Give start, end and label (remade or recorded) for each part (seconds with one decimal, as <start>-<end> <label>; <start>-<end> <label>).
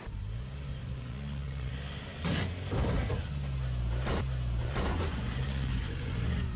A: 0.0-0.8 recorded; 0.8-1.7 remade; 1.7-4.6 recorded; 4.6-6.6 remade